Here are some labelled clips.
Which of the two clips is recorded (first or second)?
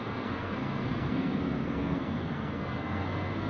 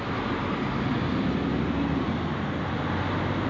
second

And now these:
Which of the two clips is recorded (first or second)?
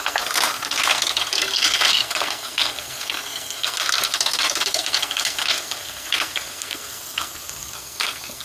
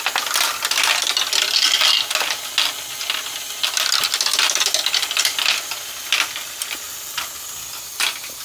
second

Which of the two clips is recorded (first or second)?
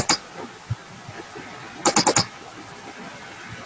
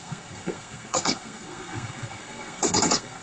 first